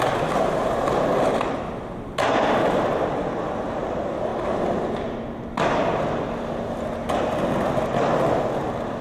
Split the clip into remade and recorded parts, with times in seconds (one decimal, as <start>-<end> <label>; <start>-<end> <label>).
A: 0.0-9.0 recorded